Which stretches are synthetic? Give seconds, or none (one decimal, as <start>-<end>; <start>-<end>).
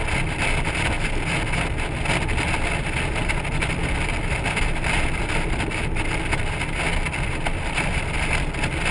3.2-6.4; 6.9-7.9